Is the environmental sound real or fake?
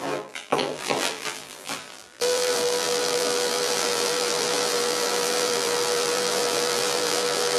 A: fake